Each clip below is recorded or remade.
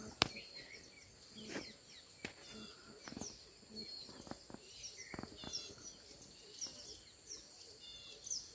recorded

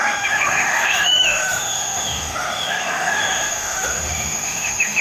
remade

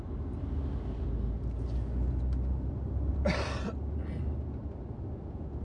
recorded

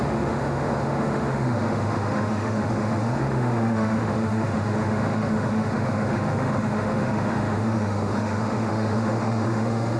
remade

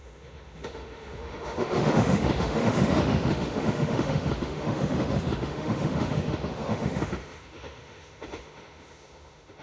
remade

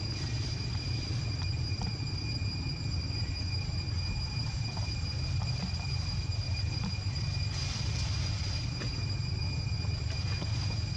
recorded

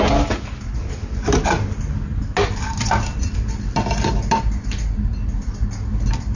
recorded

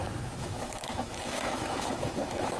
remade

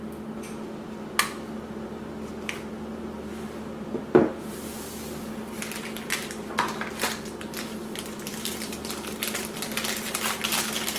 recorded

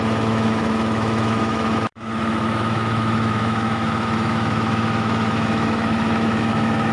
remade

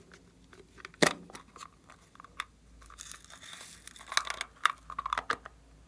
recorded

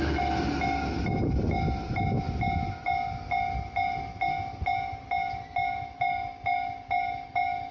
recorded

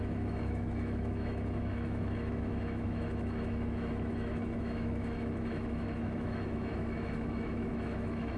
remade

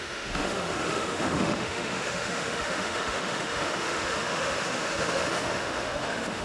remade